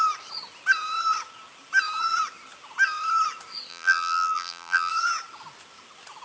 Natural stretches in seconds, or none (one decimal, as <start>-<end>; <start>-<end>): 0.0-3.7; 4.9-6.2